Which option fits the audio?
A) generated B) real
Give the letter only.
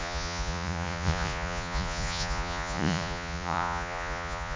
A